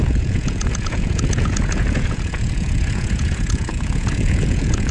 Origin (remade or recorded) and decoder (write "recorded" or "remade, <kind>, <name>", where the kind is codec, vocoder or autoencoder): remade, vocoder, Vocos